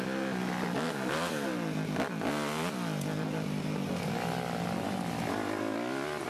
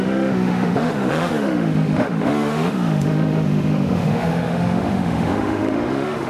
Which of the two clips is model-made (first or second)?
second